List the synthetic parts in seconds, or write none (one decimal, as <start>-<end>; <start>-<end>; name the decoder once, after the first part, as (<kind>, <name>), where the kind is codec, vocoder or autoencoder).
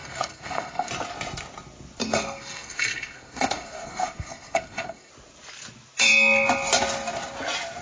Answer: 0.0-0.9 (codec, SNAC); 2.0-5.1